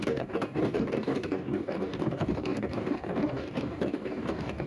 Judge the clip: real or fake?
fake